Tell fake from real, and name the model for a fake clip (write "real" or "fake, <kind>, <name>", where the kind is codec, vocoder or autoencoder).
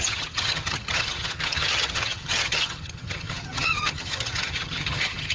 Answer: fake, vocoder, HiFi-GAN